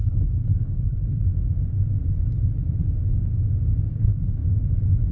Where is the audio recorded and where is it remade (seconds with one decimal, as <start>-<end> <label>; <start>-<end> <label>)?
0.0-1.2 remade; 1.2-3.9 recorded; 3.9-4.4 remade; 4.4-5.1 recorded